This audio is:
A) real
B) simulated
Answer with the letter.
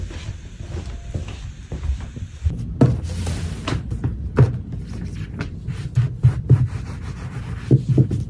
A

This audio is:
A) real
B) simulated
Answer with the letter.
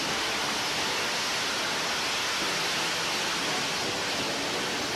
A